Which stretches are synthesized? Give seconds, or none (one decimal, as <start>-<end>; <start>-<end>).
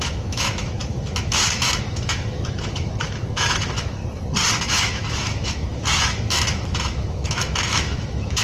0.0-4.0; 4.6-8.4